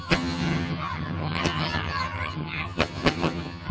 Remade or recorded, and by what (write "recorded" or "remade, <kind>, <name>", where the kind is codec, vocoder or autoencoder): remade, vocoder, HiFi-GAN